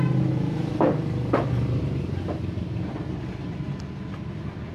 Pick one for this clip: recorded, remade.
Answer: recorded